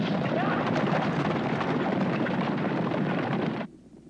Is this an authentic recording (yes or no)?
no